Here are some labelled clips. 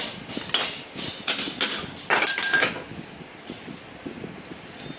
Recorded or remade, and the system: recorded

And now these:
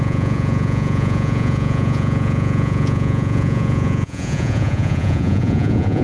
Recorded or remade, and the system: remade, vocoder, Vocos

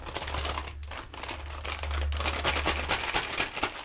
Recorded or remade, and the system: recorded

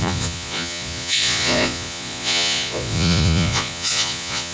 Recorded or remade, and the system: remade, vocoder, Vocos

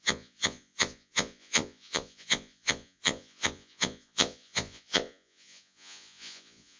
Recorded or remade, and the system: remade, vocoder, Vocos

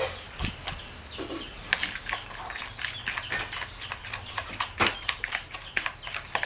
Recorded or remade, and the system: recorded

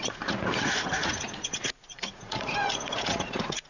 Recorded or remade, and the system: remade, vocoder, Vocos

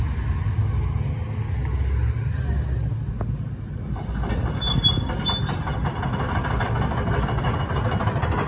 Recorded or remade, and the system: recorded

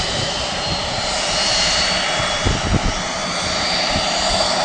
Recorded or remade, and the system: recorded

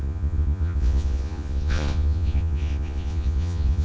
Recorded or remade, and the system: remade, vocoder, Vocos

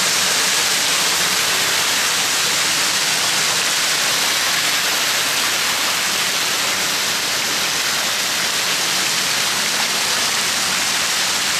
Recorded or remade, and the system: recorded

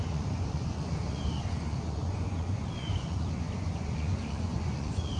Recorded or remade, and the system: remade, vocoder, Vocos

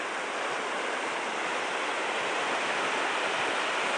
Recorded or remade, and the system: recorded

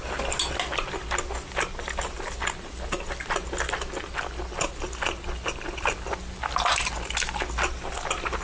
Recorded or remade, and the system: recorded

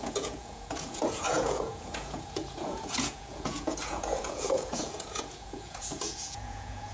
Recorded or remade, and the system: remade, vocoder, Vocos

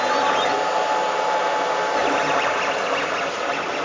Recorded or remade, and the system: recorded